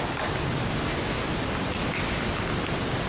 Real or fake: real